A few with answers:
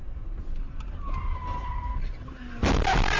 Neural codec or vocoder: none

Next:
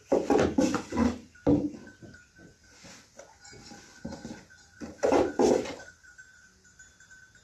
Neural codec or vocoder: none